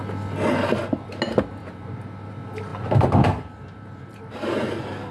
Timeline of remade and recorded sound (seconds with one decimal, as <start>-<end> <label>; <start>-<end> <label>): 0.0-1.6 recorded; 1.6-2.3 remade; 2.3-2.7 recorded; 2.7-4.2 remade; 4.2-5.1 recorded

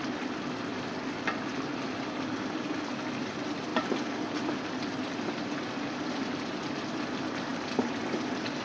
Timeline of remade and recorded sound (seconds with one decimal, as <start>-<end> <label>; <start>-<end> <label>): 0.0-7.5 recorded; 7.5-8.0 remade; 8.0-8.6 recorded

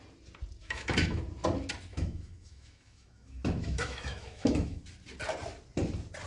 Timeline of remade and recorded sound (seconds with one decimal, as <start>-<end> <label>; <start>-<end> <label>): 0.0-0.6 recorded; 0.6-1.2 remade; 1.2-1.9 recorded; 1.9-4.8 remade; 4.8-6.3 recorded

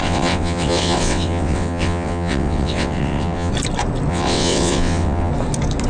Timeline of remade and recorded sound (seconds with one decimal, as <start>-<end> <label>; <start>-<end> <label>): 0.0-3.5 remade; 3.5-4.1 recorded; 4.1-5.3 remade; 5.3-5.9 recorded

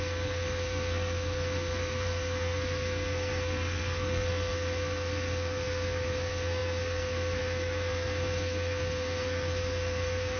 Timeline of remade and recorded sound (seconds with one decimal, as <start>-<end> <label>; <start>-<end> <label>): 0.0-10.4 remade